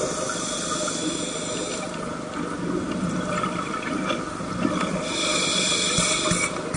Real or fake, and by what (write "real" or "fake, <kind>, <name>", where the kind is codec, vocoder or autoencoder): real